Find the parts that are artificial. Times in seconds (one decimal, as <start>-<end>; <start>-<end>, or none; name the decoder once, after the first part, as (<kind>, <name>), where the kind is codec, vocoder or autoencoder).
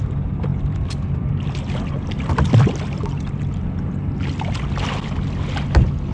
0.5-3.6 (vocoder, BigVGAN v2)